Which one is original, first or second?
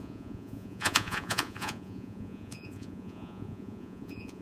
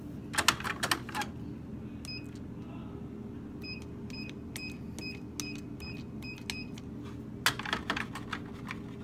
second